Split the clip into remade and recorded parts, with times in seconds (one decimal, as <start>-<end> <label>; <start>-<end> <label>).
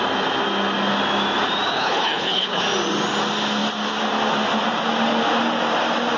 0.0-1.7 recorded; 1.7-2.6 remade; 2.6-6.2 recorded